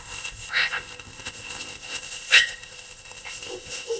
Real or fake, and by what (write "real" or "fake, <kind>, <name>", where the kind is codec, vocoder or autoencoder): fake, codec, ZipCodec